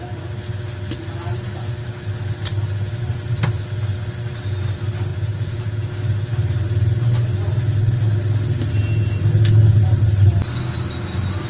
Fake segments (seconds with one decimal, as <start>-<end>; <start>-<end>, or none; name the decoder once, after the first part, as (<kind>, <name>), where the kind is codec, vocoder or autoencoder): 5.1-5.9 (vocoder, Vocos)

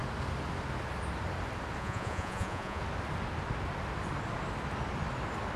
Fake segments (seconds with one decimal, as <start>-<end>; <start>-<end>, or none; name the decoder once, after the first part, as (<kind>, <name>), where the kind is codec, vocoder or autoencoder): 1.8-2.8 (vocoder, Vocos)

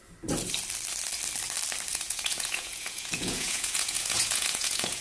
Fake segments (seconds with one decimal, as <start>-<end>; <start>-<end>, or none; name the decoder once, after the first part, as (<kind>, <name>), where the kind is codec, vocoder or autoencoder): 1.9-5.0 (vocoder, Vocos)

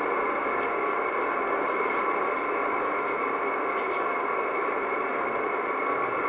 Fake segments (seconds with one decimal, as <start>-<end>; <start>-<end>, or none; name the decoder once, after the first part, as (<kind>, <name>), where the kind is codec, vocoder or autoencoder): none

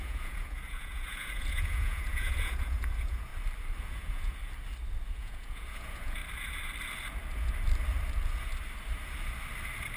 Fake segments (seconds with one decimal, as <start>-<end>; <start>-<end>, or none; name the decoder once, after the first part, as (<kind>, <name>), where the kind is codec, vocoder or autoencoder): 0.0-3.3 (vocoder, Vocos); 3.8-4.4; 5.1-6.2